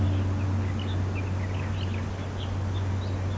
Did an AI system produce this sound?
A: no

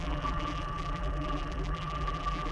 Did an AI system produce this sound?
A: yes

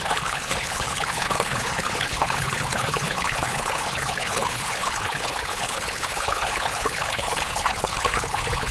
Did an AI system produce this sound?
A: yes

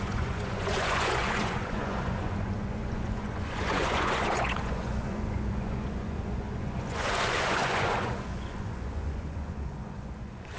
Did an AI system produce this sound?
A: yes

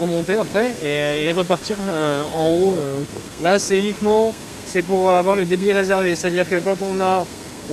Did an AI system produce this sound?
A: yes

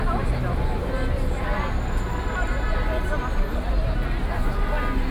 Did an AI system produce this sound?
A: no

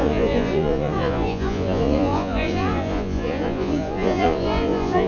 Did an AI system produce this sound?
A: yes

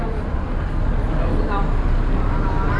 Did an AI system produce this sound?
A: no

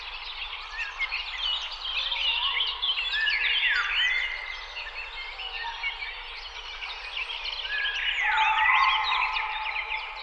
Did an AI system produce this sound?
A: no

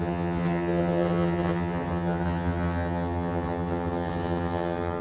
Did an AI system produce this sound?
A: yes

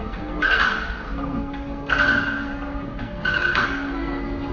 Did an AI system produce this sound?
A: yes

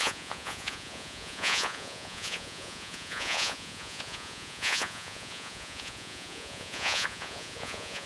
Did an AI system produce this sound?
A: yes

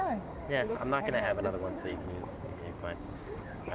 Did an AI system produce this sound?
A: yes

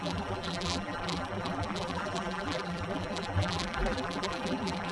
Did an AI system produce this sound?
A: yes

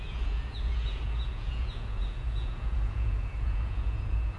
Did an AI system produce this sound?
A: yes